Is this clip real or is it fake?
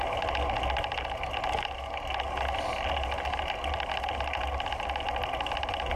real